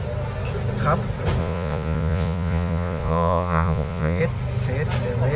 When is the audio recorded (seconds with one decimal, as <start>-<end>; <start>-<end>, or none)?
0.0-1.4; 4.2-5.4